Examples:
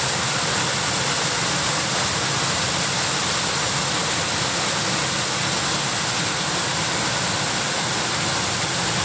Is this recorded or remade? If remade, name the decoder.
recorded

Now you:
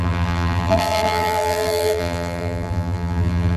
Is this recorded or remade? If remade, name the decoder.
remade, vocoder, BigVGAN v2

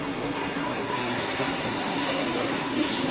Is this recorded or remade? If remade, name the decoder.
remade, codec, SNAC